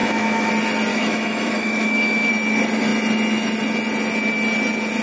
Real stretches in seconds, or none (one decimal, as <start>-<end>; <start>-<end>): 0.5-0.9; 2.3-5.0